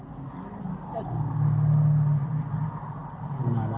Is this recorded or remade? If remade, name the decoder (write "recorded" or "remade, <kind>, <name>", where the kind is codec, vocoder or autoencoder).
recorded